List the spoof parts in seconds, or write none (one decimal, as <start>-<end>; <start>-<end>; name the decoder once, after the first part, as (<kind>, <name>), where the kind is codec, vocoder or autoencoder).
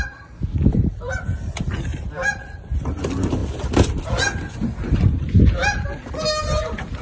none